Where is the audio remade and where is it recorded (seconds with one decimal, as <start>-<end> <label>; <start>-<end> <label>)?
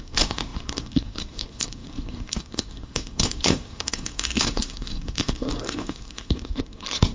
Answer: 0.0-7.1 remade